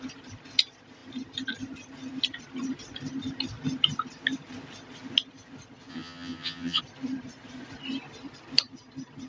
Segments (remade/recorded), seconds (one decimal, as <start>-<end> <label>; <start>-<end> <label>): 0.0-5.9 recorded; 5.9-6.8 remade; 6.8-9.3 recorded